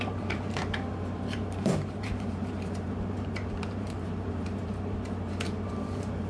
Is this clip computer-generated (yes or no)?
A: yes